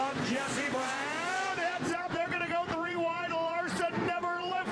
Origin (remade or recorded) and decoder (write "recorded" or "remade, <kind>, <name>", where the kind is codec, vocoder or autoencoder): remade, vocoder, Vocos